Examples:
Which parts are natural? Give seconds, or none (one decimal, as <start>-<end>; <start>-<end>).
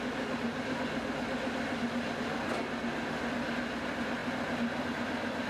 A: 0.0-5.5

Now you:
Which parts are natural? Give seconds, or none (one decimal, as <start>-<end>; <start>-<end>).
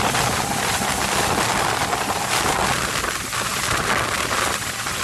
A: 0.0-5.0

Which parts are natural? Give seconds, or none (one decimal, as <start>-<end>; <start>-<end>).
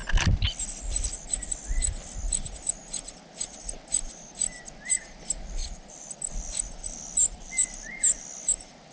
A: 0.0-5.6; 6.3-8.9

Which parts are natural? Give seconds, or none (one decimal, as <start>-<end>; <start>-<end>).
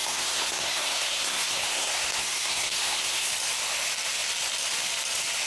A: 3.3-5.5